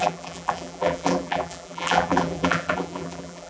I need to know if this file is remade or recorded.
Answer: remade